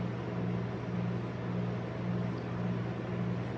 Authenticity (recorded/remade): recorded